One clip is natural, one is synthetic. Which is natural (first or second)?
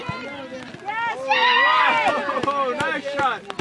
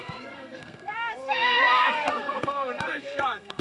first